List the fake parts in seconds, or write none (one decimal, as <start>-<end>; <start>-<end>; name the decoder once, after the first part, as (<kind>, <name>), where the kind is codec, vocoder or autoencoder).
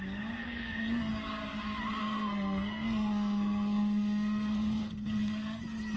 0.4-1.1 (codec, SNAC); 2.0-5.6